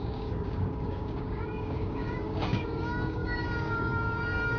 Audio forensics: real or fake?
fake